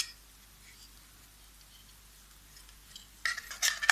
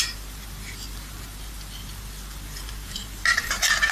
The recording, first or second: first